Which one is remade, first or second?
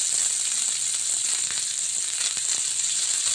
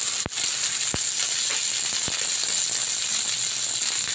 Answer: first